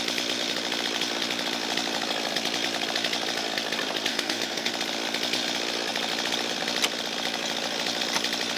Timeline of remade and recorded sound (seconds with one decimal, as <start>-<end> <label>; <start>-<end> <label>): 0.0-4.1 recorded; 4.1-4.7 remade; 4.7-8.6 recorded